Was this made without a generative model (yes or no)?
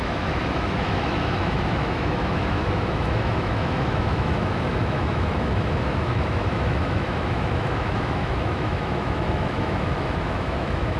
no